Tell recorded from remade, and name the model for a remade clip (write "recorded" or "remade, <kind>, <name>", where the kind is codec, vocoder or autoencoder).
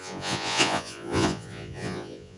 remade, vocoder, Vocos